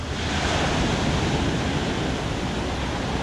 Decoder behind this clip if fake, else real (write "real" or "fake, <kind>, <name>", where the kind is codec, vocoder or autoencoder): real